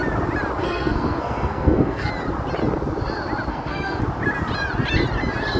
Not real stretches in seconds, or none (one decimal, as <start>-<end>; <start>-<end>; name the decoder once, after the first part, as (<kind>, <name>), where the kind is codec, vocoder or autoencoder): 0.6-2.1 (codec, SNAC); 3.5-4.0

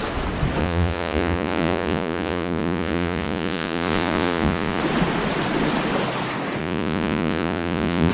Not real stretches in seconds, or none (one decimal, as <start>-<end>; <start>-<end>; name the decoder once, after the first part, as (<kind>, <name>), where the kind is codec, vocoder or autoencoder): 0.6-4.8 (vocoder, Vocos); 6.6-8.1

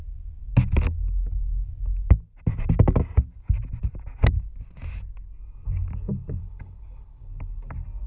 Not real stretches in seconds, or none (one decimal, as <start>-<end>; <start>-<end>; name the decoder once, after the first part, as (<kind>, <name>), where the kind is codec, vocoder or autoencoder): 6.4-7.3 (codec, HILCodec)

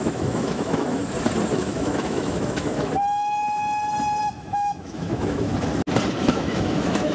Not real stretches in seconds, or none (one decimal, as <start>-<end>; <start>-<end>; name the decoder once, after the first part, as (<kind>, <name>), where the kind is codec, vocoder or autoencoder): 0.0-1.0 (autoencoder, DAC-VAE); 1.5-2.9; 4.2-5.5; 6.2-7.1

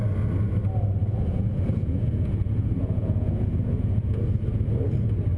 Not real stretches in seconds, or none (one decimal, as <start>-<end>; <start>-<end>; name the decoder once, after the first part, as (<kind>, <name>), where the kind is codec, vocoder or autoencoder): 1.0-4.2 (vocoder, Vocos)

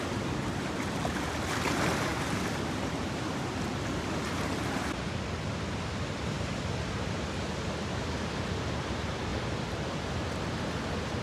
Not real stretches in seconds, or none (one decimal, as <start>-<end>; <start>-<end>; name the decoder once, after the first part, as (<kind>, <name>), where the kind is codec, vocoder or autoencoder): none